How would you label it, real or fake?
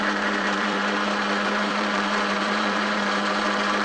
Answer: fake